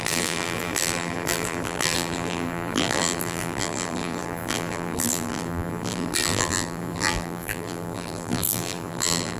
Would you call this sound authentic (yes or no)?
no